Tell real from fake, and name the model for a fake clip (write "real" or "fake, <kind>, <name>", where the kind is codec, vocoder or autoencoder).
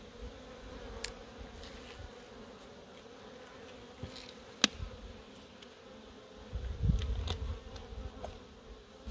real